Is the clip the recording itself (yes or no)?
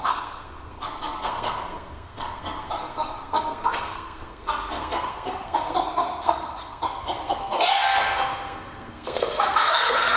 no